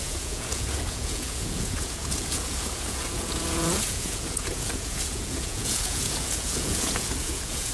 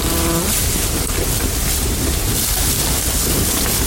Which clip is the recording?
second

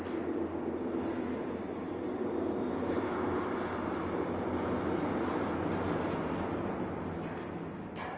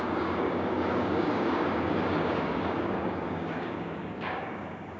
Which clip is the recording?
first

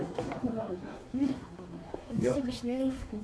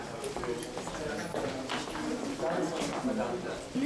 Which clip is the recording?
second